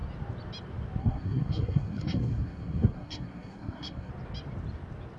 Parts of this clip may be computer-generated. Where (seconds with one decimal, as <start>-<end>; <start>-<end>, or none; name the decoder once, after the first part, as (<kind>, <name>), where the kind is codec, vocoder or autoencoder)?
1.0-4.1 (codec, SNAC)